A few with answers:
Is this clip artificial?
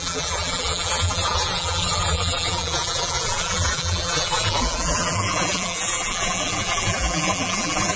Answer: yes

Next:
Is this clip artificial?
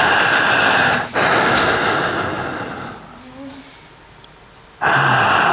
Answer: no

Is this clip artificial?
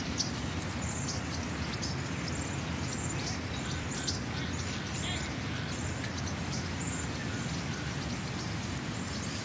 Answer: no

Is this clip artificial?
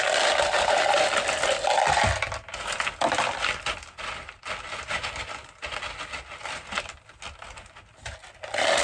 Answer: no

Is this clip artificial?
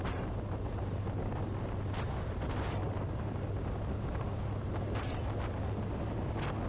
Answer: no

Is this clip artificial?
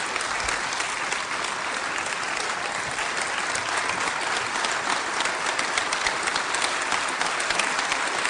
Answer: no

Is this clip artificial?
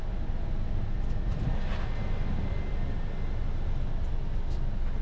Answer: no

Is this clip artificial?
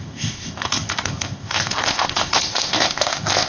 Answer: yes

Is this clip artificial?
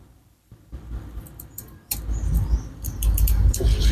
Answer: yes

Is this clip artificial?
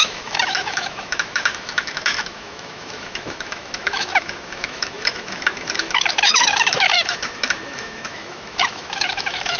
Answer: yes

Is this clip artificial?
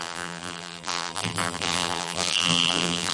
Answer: yes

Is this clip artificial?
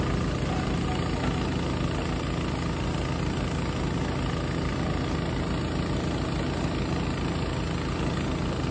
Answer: no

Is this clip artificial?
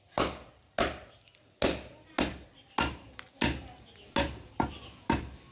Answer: no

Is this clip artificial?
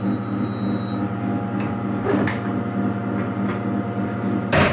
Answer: no